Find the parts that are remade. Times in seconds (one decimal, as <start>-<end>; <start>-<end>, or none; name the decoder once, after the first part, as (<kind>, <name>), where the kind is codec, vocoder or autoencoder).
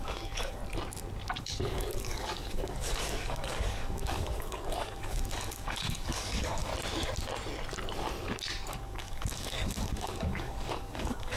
0.0-0.6 (codec, DAC); 1.4-6.7; 8.7-11.4